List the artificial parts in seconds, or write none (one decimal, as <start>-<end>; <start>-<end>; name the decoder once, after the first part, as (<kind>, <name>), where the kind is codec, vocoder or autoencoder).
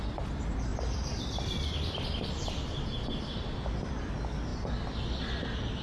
0.7-4.1 (vocoder, BigVGAN v2)